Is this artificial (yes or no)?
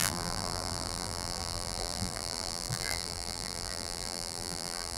yes